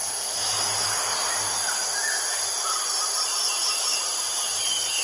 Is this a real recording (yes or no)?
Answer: yes